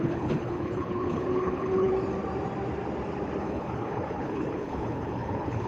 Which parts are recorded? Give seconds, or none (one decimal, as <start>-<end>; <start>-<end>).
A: 1.9-3.4